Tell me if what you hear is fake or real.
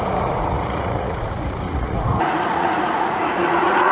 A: fake